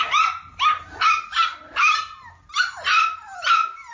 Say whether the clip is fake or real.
real